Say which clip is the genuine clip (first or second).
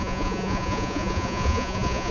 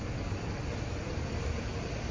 second